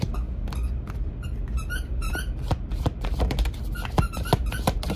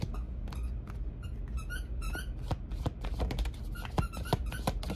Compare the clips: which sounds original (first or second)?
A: second